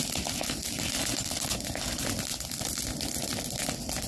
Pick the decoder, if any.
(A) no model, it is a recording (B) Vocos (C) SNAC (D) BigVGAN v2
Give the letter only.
A